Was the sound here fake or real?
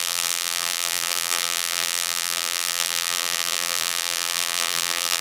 fake